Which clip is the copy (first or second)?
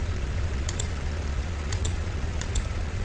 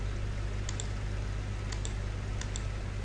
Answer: first